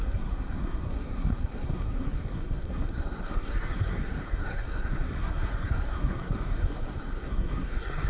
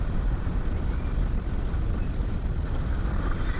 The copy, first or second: first